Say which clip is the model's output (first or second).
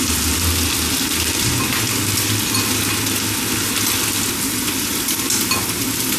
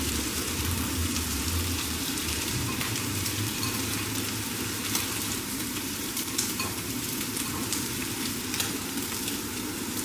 second